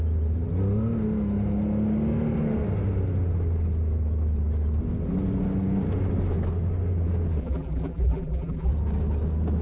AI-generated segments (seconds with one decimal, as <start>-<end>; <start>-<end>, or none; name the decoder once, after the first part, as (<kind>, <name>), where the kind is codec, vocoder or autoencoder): 7.4-8.7 (vocoder, BigVGAN v2)